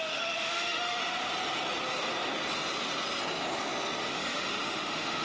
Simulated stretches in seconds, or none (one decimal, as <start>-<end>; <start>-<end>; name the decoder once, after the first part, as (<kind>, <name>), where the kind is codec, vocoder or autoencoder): 0.0-1.0 (autoencoder, DAC-VAE); 4.1-5.2